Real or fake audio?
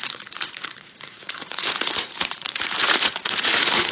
fake